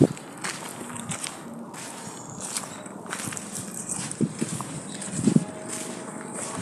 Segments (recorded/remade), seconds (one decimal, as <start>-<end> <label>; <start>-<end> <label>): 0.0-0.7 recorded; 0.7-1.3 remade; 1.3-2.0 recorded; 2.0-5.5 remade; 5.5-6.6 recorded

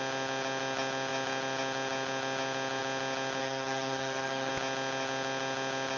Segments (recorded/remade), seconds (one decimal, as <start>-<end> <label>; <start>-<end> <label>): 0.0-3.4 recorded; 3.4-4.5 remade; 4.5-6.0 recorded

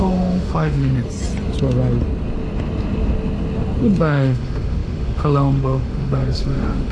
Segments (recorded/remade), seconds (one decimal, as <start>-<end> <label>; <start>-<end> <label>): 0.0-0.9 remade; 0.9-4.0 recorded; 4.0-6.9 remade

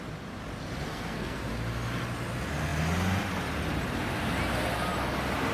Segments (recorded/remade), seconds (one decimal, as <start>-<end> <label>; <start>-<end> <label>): 0.0-0.9 recorded; 0.9-1.5 remade; 1.5-5.5 recorded